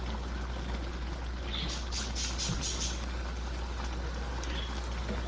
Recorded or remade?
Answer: recorded